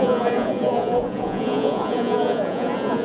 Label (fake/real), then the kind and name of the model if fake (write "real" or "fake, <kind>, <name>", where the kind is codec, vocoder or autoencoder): fake, vocoder, Vocos